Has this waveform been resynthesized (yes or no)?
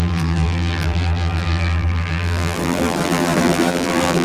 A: yes